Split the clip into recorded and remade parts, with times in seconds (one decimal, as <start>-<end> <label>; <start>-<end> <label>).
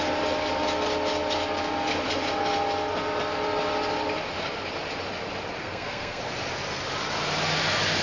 0.0-5.6 recorded; 5.6-6.2 remade; 6.2-8.0 recorded